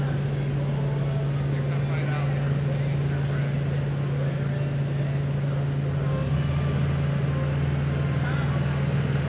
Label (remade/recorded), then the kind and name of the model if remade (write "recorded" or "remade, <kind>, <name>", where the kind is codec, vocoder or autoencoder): recorded